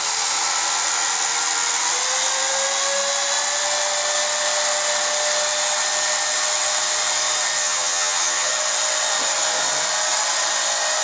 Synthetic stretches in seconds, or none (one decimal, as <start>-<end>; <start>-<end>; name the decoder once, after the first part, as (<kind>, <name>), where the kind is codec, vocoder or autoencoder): 7.6-8.5 (vocoder, HiFi-GAN)